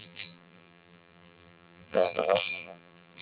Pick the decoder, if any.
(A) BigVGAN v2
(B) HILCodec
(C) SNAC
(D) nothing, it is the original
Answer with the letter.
A